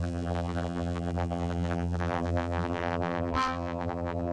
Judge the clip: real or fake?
fake